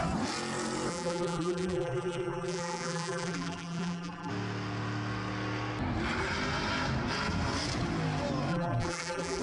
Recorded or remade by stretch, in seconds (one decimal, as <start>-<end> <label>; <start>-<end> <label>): 0.0-0.9 recorded; 0.9-4.3 remade; 4.3-8.5 recorded; 8.5-9.4 remade